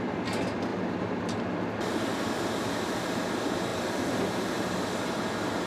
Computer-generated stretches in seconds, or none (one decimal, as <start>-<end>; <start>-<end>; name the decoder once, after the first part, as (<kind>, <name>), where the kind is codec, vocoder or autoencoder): 0.0-2.1 (vocoder, BigVGAN v2); 2.9-3.7